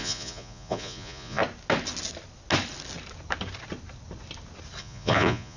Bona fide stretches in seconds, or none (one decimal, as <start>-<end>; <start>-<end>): 1.4-4.8